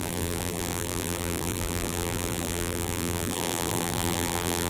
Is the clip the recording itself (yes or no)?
no